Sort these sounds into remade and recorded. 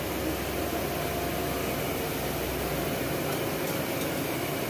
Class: recorded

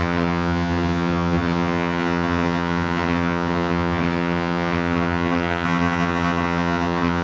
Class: remade